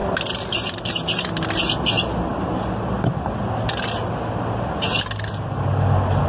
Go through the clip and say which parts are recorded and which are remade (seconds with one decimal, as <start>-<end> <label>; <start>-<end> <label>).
0.0-6.3 recorded